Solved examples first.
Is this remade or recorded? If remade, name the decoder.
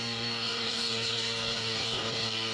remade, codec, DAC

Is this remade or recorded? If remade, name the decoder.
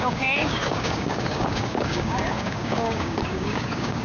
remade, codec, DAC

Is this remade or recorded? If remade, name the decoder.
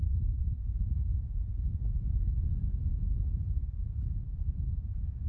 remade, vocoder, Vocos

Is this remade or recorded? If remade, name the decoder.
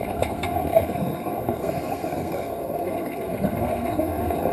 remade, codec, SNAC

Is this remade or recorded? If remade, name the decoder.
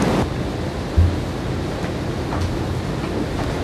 recorded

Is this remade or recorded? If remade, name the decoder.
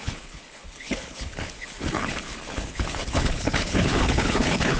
remade, codec, HILCodec